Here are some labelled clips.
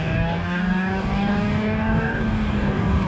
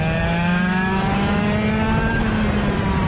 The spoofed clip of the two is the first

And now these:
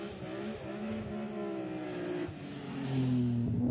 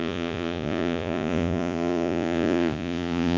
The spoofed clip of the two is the second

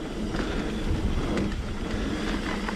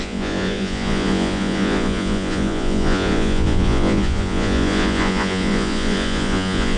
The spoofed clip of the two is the second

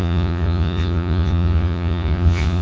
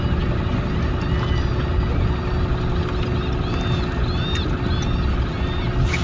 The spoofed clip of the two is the first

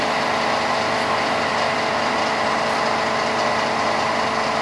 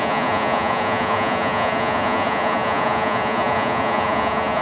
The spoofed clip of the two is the second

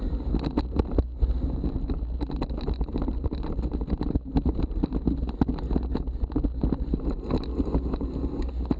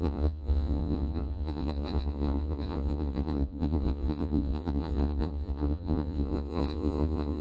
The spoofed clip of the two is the second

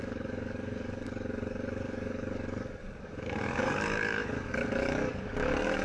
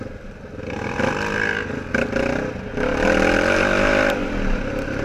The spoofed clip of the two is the first